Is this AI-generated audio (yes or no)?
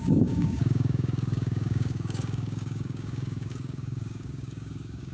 yes